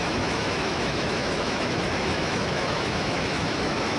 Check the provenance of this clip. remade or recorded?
remade